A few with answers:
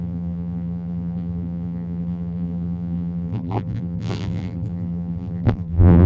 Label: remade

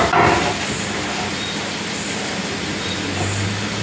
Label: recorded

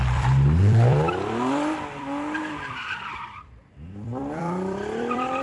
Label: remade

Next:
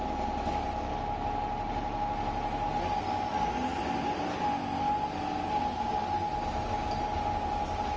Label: recorded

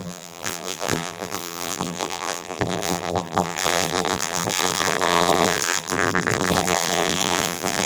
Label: remade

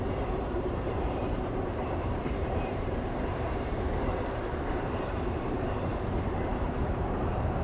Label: remade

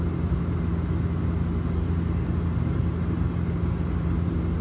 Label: recorded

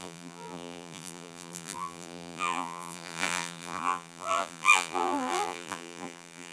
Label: remade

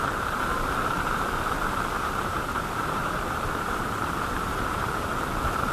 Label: remade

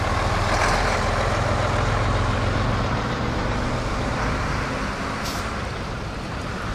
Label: remade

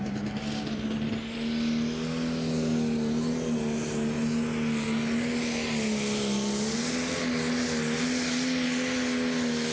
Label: recorded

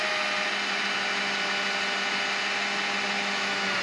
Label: recorded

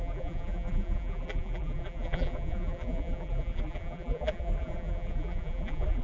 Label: remade